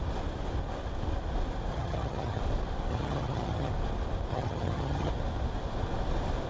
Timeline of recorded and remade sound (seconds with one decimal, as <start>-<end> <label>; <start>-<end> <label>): 0.0-1.7 recorded; 1.7-2.4 remade; 2.4-2.9 recorded; 2.9-3.7 remade; 3.7-4.3 recorded; 4.3-5.1 remade; 5.1-6.5 recorded